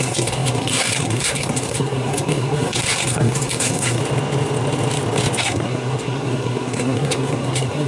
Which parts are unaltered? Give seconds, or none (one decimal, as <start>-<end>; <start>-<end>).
4.0-5.4